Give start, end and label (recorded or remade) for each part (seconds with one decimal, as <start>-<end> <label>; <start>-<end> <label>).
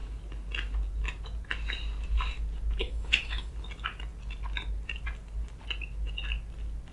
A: 0.0-2.8 recorded; 2.8-3.5 remade; 3.5-6.9 recorded